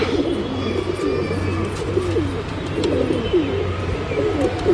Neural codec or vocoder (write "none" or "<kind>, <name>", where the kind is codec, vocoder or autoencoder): none